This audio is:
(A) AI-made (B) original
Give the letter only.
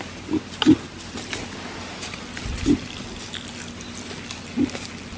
B